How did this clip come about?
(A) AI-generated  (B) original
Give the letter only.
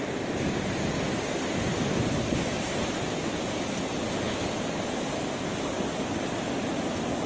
B